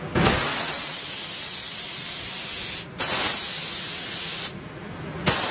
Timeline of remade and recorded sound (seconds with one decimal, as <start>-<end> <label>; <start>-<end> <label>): 0.0-0.5 recorded; 0.5-1.2 remade; 1.2-1.6 recorded; 1.6-2.1 remade; 2.1-5.5 recorded